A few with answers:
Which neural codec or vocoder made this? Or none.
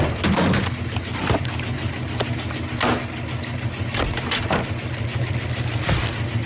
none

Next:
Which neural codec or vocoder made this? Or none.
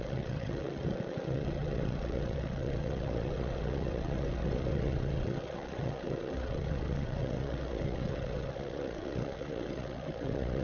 vocoder, WaveNeXt